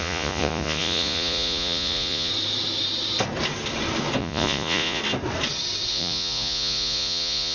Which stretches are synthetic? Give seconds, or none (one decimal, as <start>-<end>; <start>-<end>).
0.0-2.3; 4.2-5.0; 5.9-7.5